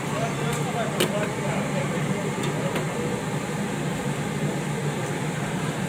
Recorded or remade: recorded